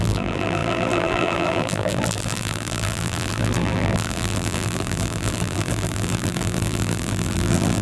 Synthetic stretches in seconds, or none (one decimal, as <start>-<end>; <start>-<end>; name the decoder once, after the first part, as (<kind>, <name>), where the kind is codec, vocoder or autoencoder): 0.0-7.8 (vocoder, BigVGAN v2)